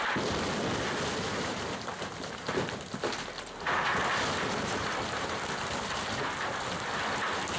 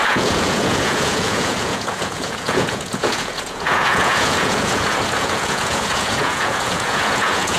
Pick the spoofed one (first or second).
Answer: second